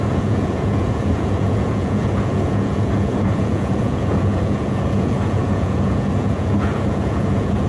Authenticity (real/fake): fake